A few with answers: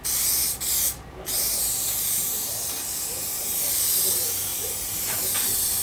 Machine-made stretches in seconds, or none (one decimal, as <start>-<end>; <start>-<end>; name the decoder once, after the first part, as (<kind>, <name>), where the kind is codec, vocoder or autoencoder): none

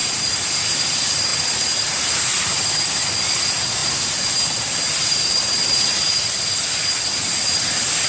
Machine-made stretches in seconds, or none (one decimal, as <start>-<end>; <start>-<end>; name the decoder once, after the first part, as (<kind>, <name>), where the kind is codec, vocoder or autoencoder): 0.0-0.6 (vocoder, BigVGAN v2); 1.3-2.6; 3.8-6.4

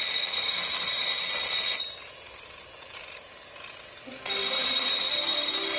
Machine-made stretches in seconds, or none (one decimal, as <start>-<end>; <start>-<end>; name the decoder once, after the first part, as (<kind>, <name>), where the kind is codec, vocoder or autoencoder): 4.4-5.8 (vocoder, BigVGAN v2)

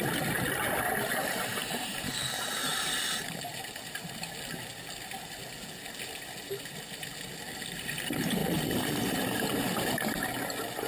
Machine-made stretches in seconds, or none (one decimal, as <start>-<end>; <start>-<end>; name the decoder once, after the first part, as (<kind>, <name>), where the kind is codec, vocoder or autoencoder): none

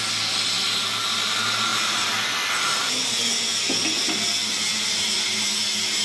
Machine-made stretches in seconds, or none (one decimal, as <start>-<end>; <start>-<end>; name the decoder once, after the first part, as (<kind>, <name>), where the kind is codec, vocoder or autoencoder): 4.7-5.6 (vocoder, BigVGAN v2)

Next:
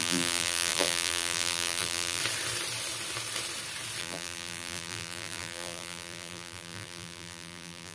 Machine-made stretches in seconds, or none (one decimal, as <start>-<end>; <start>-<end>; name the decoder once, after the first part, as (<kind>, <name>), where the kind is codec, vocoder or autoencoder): 0.0-2.2 (vocoder, BigVGAN v2); 4.0-7.9

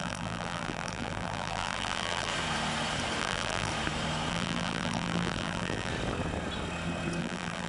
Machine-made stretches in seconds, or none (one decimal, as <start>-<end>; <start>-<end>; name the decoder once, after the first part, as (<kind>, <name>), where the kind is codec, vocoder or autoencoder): 0.0-2.3 (vocoder, BigVGAN v2); 3.2-3.7; 4.3-5.9; 7.2-7.7